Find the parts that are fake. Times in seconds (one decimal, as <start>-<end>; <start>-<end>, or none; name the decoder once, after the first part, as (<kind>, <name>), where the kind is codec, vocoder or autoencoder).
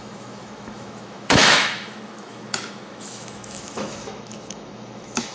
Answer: 0.0-5.3 (autoencoder, DAC-VAE)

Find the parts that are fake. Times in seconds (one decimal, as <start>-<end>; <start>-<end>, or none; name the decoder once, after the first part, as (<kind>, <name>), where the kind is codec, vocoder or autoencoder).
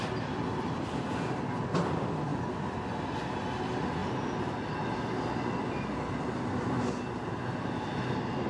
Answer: none